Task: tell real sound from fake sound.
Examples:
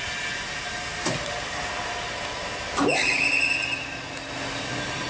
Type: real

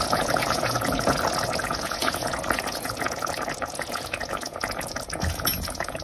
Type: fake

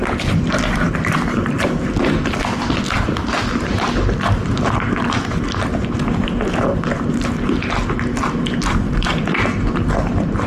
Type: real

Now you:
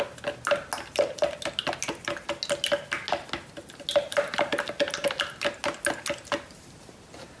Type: real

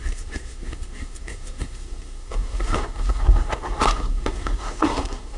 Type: fake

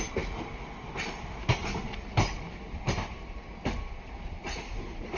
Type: real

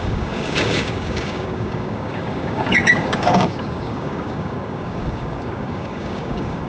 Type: fake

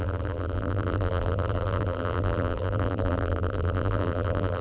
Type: fake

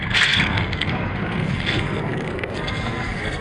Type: fake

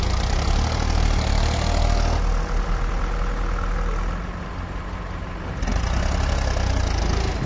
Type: real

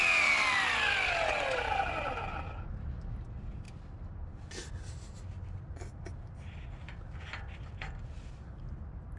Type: real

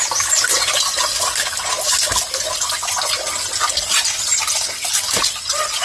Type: fake